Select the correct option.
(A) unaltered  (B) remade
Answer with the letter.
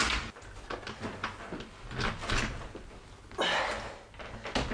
A